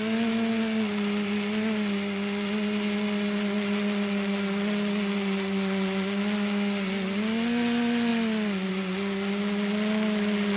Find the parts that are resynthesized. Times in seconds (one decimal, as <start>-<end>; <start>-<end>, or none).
none

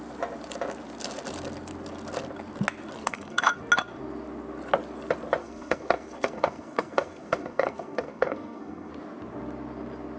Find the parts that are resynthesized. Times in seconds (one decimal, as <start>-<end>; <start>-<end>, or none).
3.0-3.6; 5.4-8.9

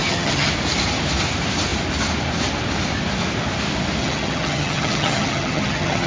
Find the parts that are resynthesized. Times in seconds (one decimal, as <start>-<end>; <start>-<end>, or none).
0.0-0.5; 4.0-6.1

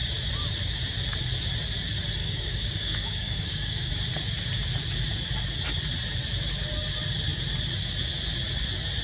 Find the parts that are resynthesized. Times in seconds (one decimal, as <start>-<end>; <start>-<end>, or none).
2.2-3.9

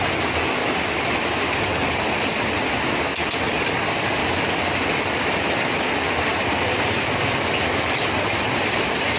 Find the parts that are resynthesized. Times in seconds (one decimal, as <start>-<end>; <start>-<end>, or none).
none

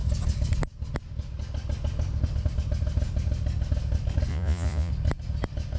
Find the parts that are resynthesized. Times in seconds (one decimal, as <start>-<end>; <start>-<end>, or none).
4.3-4.9

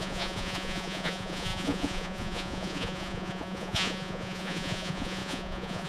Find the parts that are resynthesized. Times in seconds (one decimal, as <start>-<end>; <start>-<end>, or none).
0.0-5.9